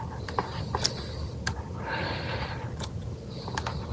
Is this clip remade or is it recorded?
recorded